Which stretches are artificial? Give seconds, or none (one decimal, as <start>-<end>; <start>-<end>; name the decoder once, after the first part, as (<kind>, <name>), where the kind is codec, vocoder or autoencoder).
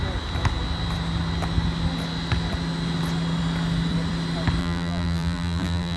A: 4.6-6.0 (vocoder, BigVGAN v2)